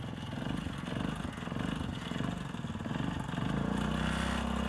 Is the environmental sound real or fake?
real